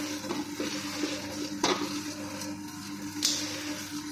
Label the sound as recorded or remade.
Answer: recorded